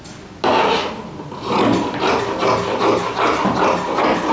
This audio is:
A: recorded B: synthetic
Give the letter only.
A